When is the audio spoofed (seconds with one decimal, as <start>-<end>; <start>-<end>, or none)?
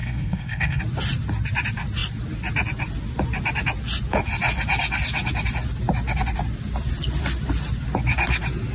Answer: 0.0-0.8